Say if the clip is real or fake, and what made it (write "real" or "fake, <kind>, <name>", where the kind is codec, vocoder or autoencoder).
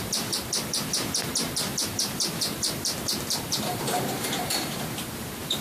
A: fake, vocoder, BigVGAN v2